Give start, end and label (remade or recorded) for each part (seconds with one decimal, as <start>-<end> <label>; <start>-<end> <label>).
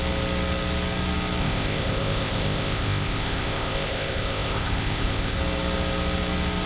0.0-1.4 recorded; 1.4-5.4 remade; 5.4-6.7 recorded